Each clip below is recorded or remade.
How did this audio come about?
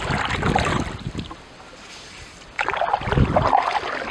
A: recorded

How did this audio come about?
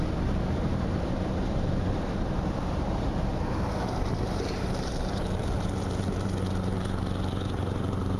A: remade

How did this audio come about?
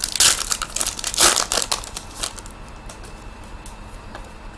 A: recorded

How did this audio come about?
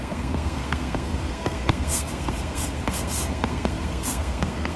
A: remade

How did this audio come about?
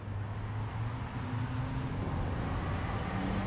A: recorded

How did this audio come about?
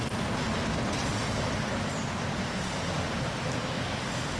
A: recorded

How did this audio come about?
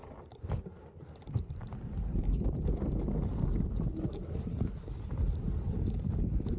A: remade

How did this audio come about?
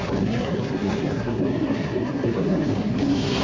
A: remade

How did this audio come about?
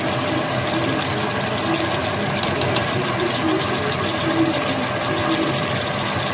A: recorded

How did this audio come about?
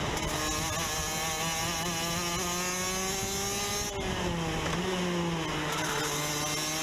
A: recorded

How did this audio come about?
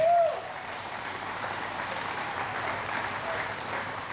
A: remade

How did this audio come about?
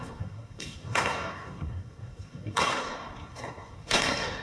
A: remade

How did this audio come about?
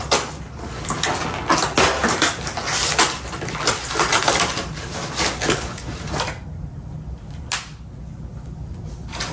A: recorded